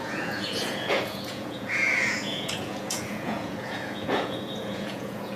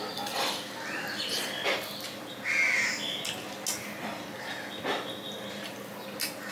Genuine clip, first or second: second